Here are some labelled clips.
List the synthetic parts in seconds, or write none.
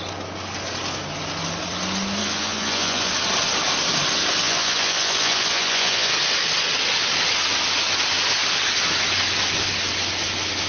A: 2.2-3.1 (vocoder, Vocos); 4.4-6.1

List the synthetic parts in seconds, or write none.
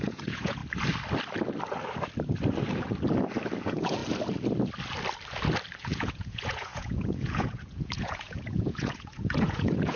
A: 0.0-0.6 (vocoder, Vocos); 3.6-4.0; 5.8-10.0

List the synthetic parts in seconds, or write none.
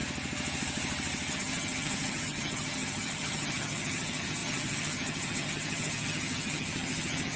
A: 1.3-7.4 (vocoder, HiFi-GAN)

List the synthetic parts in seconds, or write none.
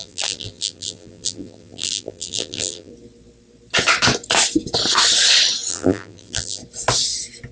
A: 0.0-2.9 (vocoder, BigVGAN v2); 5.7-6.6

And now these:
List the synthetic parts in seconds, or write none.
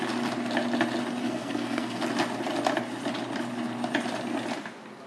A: 1.2-2.0 (codec, SNAC)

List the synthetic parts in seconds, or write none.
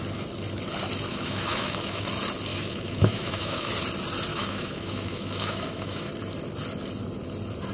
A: 1.1-2.1 (autoencoder, DAC-VAE); 2.5-3.7; 4.3-6.1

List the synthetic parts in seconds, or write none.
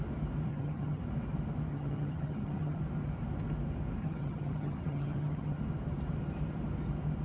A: 0.5-1.0 (vocoder, HiFi-GAN); 1.7-2.8; 4.0-5.6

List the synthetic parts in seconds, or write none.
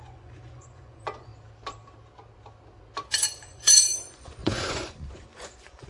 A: 0.0-1.3 (vocoder, Vocos); 3.1-5.9